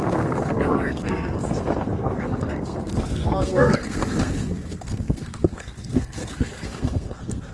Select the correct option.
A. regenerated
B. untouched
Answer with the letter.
A